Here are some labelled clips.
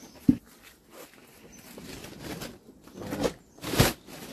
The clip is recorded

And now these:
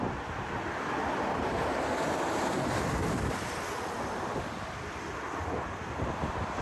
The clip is remade